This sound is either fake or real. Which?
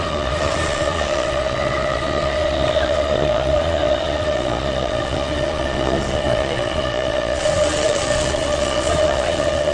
fake